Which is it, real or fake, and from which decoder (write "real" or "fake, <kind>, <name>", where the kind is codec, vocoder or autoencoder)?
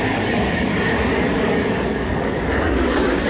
fake, codec, DAC